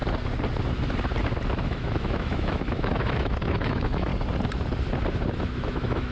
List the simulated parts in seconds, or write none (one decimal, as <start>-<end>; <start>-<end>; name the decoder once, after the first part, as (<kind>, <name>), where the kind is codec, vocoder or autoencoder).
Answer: 1.6-4.1 (autoencoder, DAC-VAE); 5.4-6.1